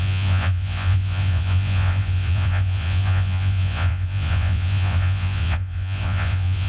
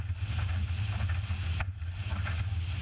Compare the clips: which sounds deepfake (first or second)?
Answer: first